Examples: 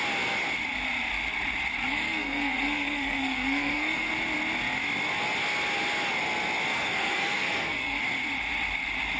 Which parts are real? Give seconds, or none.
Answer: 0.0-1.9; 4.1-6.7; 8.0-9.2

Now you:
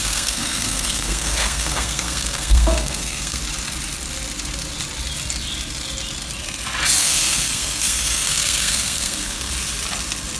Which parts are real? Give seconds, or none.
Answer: 3.4-7.0; 9.5-10.4

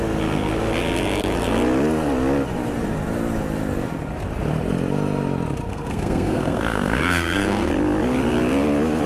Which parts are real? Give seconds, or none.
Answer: 0.0-5.7; 7.7-9.1

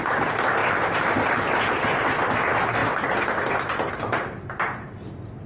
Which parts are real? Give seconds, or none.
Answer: 0.0-5.5

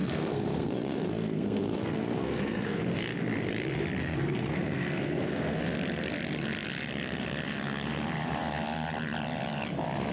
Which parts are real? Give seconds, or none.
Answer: 2.8-4.0; 5.6-10.1